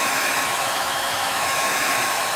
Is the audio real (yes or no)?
no